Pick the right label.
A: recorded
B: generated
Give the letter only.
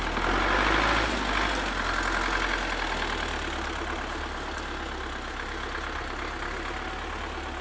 A